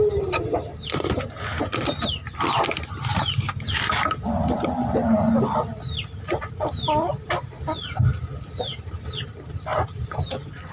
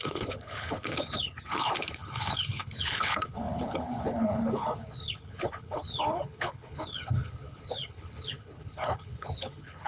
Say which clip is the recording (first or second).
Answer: first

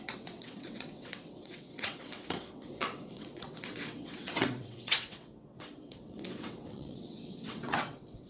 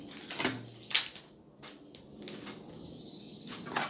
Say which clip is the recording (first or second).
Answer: second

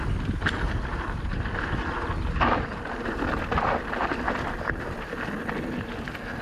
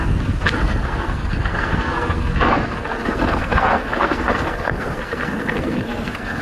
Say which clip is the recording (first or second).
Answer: first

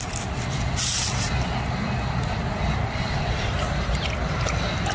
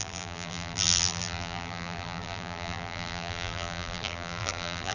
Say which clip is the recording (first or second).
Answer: first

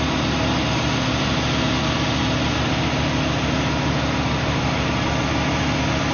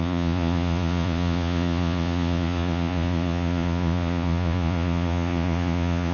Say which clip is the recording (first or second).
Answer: first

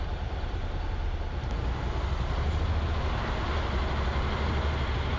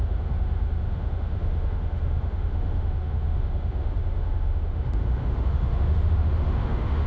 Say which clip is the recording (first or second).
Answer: first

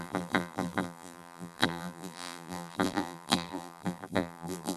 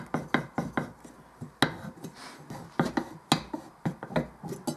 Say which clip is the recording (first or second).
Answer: second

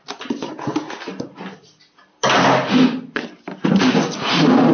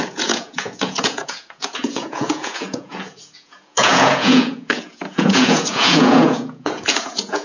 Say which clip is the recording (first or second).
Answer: first